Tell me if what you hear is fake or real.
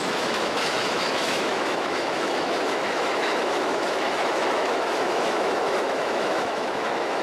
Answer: fake